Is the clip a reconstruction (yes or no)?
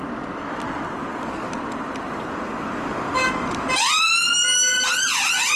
no